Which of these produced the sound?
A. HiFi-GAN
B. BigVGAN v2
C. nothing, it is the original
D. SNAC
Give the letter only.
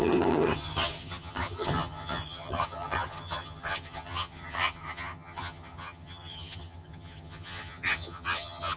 A